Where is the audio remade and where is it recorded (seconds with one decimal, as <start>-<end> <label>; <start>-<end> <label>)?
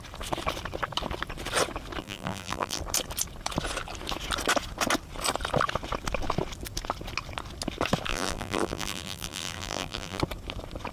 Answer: 0.0-2.0 recorded; 2.0-2.8 remade; 2.8-8.1 recorded; 8.1-10.2 remade; 10.2-10.9 recorded